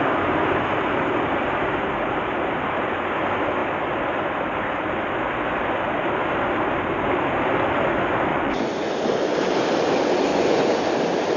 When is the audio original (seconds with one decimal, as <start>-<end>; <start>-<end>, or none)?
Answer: 0.0-8.3; 8.9-10.3; 10.8-11.4